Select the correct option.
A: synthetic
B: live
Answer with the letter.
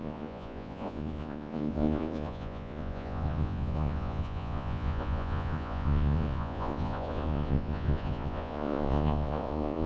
A